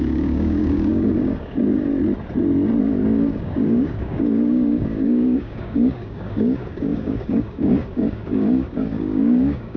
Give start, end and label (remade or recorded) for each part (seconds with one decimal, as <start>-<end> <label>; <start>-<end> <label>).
0.0-1.9 remade; 1.9-2.8 recorded; 2.8-9.8 remade